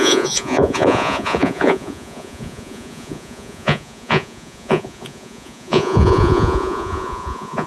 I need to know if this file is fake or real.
fake